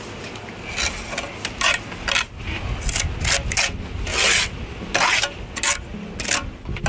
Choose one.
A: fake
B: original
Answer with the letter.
B